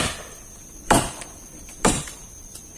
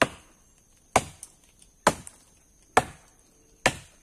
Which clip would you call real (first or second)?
second